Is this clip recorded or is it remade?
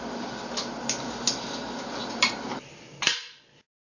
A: recorded